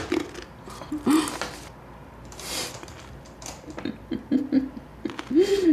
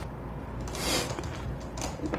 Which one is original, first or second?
second